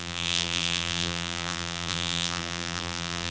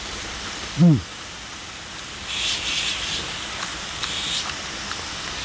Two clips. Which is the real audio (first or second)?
second